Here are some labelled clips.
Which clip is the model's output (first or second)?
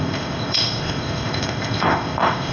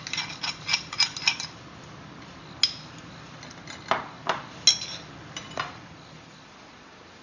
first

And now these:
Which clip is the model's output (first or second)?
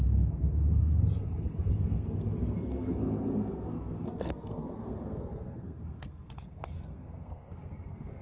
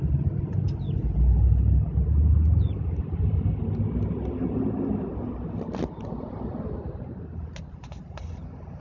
first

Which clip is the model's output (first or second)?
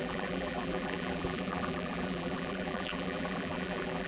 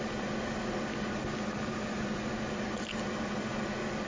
first